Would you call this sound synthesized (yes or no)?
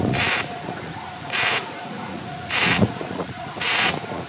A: yes